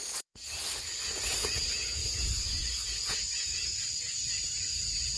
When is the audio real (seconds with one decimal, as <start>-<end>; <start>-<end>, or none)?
3.9-4.4